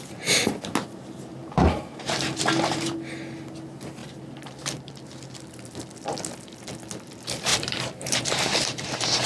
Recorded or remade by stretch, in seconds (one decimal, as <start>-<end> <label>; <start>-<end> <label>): 0.0-1.4 recorded; 1.4-2.8 remade; 2.8-4.0 recorded; 4.0-4.9 remade; 4.9-7.5 recorded; 7.5-9.3 remade